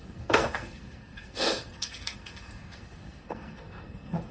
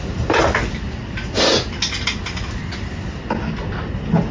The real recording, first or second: second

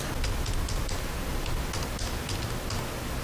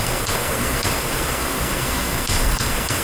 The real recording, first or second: first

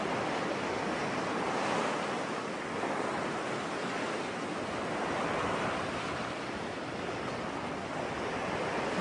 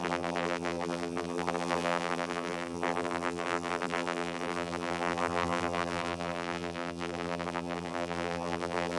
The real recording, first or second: first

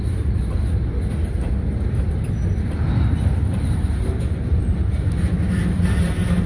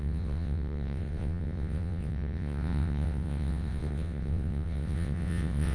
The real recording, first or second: first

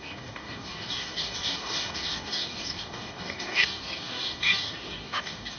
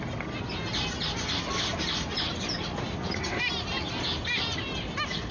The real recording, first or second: second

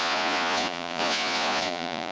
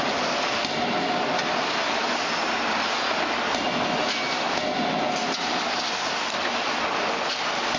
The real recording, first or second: second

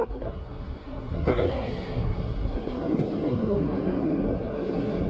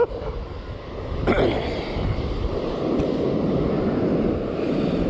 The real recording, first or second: second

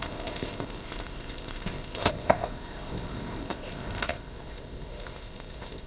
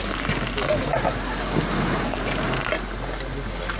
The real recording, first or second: second